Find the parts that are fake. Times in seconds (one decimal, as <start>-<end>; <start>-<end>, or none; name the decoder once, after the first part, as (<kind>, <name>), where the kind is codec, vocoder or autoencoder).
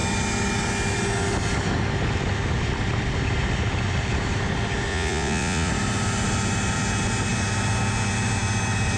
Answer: 4.9-5.7 (vocoder, Vocos)